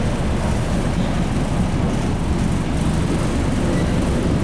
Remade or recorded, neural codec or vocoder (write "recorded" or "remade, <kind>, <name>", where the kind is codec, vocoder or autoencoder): recorded